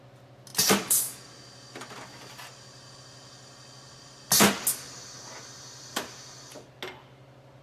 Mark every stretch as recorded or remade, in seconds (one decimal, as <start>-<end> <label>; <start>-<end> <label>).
0.0-7.6 recorded